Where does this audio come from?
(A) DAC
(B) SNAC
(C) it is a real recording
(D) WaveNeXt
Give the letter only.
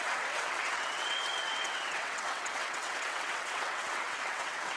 D